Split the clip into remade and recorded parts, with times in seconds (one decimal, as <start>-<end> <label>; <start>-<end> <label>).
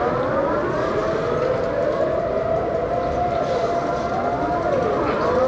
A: 0.0-5.5 recorded